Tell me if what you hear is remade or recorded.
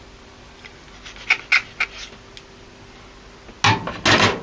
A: recorded